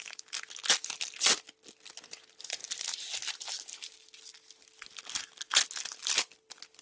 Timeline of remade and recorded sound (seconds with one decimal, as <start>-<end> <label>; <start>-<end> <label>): 0.0-6.8 recorded